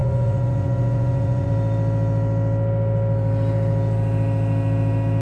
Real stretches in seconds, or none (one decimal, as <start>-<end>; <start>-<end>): 1.5-5.2